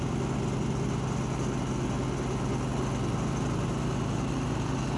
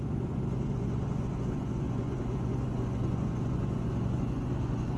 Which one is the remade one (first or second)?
second